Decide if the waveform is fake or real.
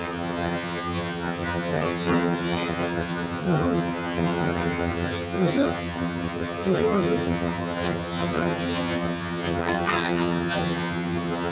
fake